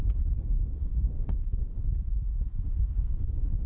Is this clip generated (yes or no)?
yes